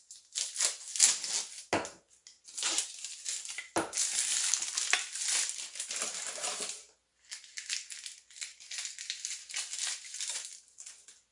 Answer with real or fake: real